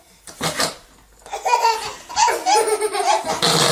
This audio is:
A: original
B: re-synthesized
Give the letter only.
A